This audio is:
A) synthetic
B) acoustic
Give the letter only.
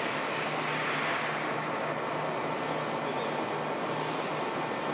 B